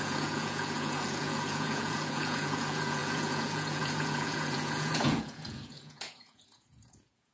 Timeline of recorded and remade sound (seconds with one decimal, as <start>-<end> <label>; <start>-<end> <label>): 0.0-7.3 remade

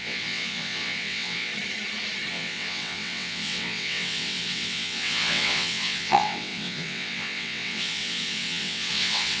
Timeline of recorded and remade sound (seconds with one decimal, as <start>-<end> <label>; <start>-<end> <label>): 0.0-1.5 remade; 1.5-2.3 recorded; 2.3-9.4 remade

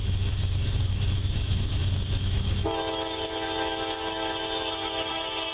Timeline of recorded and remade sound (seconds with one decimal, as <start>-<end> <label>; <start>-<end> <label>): 0.0-5.5 remade